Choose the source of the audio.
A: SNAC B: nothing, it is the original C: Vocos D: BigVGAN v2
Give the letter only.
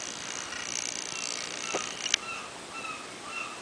B